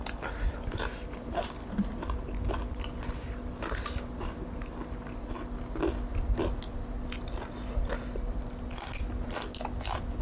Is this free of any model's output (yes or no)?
yes